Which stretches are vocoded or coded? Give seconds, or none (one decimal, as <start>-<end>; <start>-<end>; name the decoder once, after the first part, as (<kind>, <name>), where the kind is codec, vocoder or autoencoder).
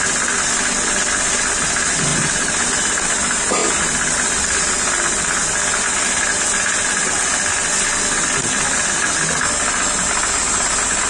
2.1-3.1 (vocoder, BigVGAN v2)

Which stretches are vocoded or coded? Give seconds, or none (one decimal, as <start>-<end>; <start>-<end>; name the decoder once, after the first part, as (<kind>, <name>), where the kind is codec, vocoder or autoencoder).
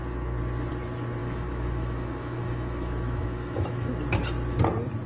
1.2-3.9 (autoencoder, DAC-VAE)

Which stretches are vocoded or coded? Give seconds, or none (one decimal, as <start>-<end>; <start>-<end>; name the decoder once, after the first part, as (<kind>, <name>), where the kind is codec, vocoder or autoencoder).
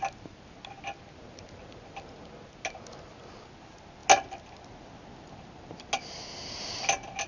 none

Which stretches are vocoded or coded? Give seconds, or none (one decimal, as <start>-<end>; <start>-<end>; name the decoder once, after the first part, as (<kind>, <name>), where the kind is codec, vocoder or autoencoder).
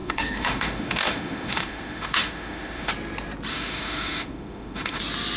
0.0-2.9 (autoencoder, DAC-VAE); 3.5-5.0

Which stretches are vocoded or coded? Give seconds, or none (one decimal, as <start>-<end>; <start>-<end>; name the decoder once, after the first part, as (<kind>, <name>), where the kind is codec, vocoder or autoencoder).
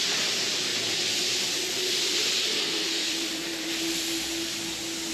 2.5-3.1 (codec, SNAC)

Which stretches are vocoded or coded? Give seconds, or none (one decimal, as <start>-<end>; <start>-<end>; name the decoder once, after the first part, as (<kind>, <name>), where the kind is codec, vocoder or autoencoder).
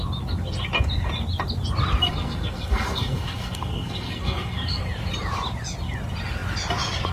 2.0-4.8 (codec, SNAC)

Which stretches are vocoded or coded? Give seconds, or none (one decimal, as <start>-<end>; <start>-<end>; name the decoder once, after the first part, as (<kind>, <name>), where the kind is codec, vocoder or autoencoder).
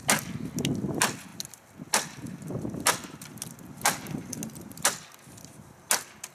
none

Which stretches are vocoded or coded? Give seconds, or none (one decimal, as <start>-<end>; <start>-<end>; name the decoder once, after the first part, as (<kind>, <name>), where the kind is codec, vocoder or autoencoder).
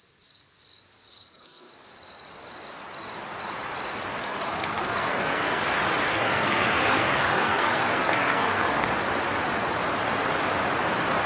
1.1-1.7 (codec, SNAC); 4.2-5.6; 6.1-8.9